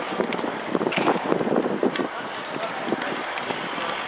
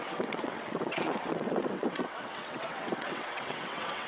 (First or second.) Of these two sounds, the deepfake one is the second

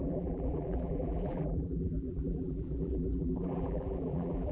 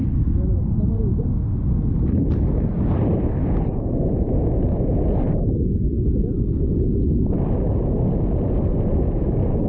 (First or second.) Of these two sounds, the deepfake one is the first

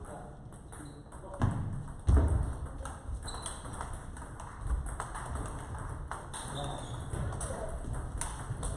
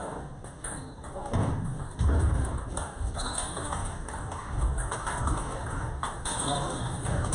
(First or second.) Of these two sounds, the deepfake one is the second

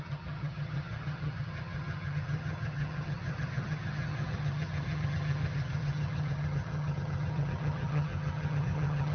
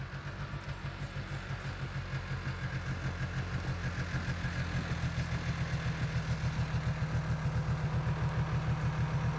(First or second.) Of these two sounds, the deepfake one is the first